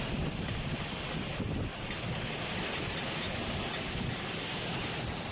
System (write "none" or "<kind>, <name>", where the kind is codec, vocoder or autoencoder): none